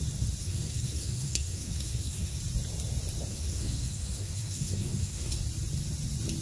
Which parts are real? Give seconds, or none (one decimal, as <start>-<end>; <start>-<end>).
0.0-0.4; 2.4-3.3; 5.4-6.4